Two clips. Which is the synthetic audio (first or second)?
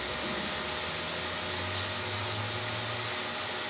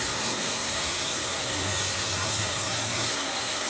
second